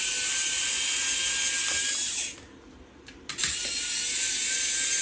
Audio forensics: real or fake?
real